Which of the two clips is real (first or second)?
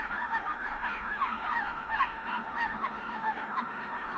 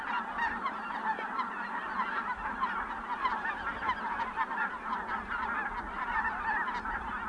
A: second